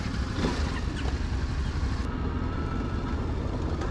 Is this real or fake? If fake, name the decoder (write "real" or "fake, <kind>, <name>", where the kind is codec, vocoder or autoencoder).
real